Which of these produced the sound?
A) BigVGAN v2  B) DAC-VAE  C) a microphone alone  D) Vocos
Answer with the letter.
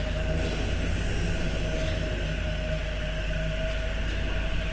C